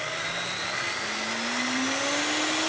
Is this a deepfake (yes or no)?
no